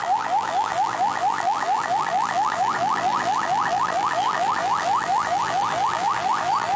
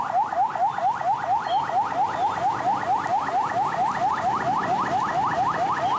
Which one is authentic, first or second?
second